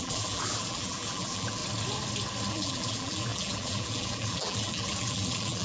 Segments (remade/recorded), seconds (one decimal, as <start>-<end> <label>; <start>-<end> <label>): 0.0-1.6 remade; 1.6-2.5 recorded; 2.5-5.6 remade